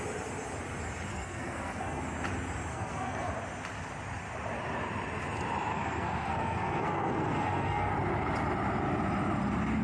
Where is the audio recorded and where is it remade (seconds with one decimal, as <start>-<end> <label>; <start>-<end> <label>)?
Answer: 0.0-1.1 recorded; 1.1-2.0 remade; 2.0-2.7 recorded; 2.7-3.3 remade; 3.3-5.7 recorded; 5.7-7.9 remade; 7.9-9.8 recorded

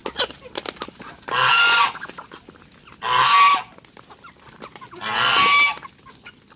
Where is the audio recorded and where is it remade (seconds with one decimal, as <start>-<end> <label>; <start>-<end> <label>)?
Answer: 0.0-6.6 recorded

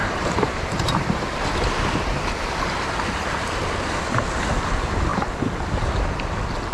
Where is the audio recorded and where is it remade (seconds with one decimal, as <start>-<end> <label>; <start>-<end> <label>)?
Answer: 0.0-1.2 remade; 1.2-6.7 recorded